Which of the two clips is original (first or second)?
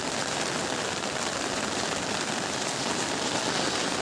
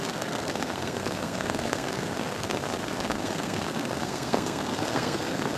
first